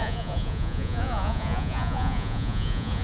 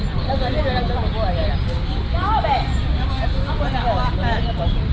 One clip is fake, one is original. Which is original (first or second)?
second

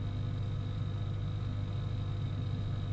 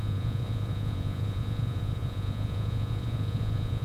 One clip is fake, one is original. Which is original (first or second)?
first